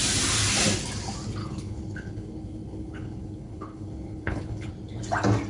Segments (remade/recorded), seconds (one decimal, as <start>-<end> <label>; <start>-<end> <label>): 0.0-1.4 recorded; 1.4-4.7 remade; 4.7-5.5 recorded